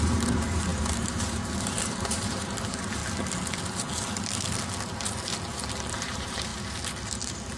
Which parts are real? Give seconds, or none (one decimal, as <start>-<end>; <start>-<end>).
3.0-5.9; 6.5-7.6